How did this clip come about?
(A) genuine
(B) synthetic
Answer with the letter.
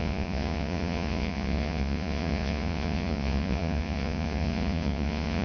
B